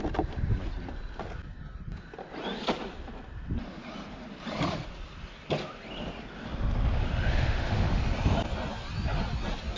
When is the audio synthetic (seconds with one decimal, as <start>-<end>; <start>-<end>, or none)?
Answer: 7.0-8.0